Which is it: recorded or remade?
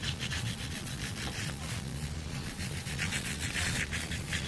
remade